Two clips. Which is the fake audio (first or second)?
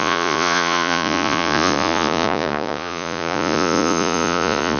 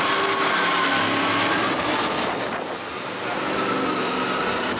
first